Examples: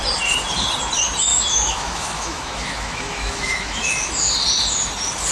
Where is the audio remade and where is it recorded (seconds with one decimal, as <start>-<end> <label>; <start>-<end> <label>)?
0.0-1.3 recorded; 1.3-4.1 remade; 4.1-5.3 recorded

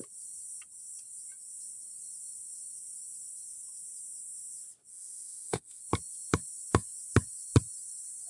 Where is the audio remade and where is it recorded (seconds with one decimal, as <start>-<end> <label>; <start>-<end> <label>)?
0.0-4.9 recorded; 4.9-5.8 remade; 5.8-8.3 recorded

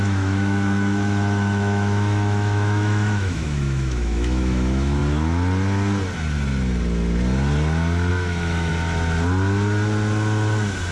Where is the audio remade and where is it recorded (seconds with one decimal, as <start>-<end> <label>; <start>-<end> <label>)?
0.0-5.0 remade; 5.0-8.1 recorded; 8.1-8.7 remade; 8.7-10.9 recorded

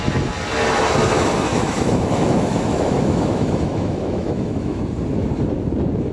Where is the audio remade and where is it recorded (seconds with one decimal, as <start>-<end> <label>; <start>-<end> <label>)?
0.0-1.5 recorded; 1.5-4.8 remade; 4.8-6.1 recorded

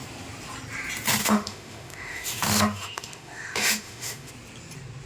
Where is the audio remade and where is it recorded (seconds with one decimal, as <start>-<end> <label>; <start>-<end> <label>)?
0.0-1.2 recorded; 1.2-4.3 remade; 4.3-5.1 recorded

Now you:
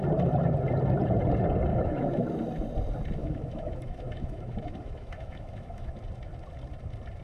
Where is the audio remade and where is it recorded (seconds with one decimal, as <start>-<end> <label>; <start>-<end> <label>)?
0.0-1.7 recorded; 1.7-2.3 remade; 2.3-3.2 recorded; 3.2-5.9 remade; 5.9-7.2 recorded